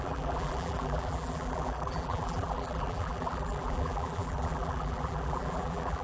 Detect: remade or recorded remade